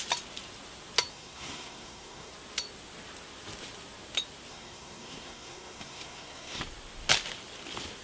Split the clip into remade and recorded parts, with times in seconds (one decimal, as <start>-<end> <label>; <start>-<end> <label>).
0.0-1.1 recorded; 1.1-2.3 remade; 2.3-4.5 recorded; 4.5-6.6 remade; 6.6-8.0 recorded

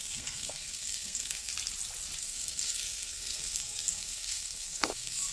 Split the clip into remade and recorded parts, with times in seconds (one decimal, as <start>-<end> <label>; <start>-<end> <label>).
0.0-1.5 remade; 1.5-2.2 recorded; 2.2-5.3 remade

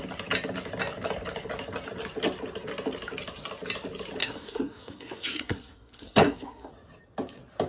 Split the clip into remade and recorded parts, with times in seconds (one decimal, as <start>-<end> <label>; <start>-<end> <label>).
0.0-4.2 recorded; 4.2-6.7 remade; 6.7-7.7 recorded

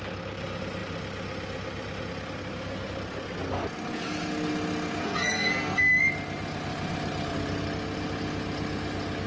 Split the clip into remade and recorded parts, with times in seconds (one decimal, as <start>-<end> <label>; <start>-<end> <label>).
0.0-5.0 recorded; 5.0-5.9 remade; 5.9-9.3 recorded